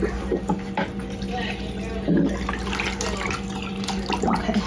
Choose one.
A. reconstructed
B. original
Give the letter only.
B